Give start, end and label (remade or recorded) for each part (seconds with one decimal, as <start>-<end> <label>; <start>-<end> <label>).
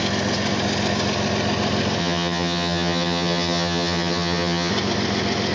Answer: 0.0-2.0 recorded; 2.0-4.7 remade; 4.7-5.5 recorded